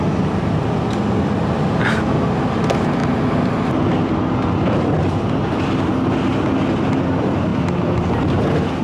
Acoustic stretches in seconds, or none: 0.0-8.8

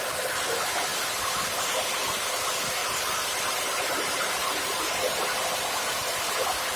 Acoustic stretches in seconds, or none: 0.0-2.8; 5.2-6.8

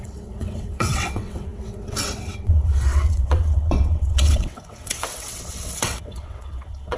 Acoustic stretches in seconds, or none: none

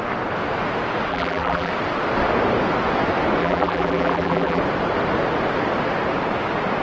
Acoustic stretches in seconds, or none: 0.0-1.1; 1.7-3.4; 4.6-6.8

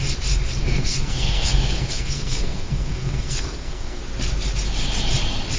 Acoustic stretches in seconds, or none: 0.0-0.6; 4.0-5.6

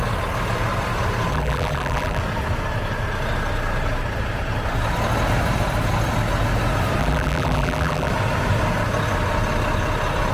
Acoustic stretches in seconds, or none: 0.0-1.3; 2.2-7.0; 8.1-10.3

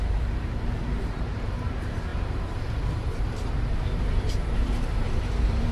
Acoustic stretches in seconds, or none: none

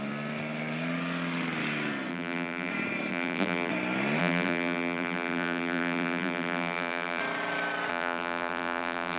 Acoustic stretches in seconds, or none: 0.0-2.1; 2.7-3.1; 3.7-4.2; 7.2-7.9